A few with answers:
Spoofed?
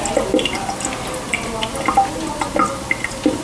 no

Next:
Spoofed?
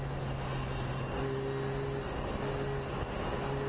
no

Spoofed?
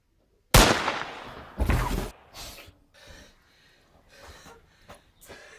no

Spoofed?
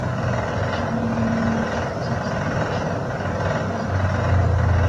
no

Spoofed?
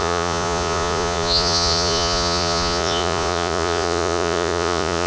yes